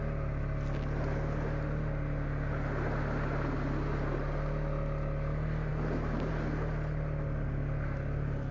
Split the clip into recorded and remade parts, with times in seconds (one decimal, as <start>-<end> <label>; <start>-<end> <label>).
0.0-8.5 recorded